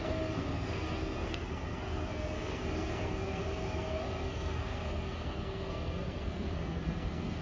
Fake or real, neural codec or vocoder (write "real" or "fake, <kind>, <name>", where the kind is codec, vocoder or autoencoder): fake, codec, SNAC